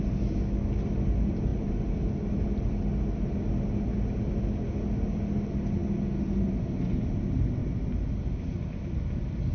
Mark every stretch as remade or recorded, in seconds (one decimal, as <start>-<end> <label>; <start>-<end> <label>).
0.0-9.5 recorded